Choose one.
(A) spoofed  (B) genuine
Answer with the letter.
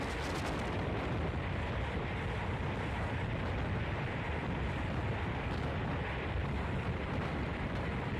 B